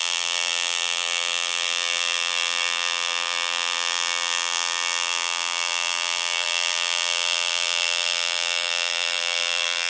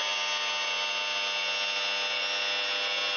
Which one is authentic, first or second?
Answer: second